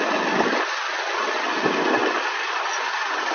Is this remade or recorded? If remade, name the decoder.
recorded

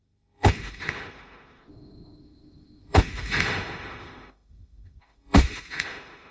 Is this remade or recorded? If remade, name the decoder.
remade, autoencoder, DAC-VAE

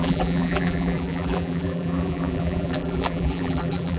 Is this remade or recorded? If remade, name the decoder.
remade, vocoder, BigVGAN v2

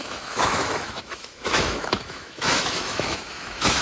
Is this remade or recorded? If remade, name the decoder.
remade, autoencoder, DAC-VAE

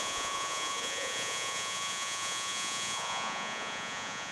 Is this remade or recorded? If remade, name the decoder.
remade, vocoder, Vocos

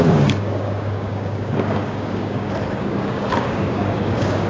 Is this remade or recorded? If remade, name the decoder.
remade, codec, DAC